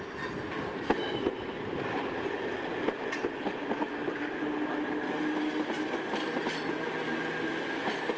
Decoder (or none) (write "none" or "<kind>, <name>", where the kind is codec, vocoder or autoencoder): none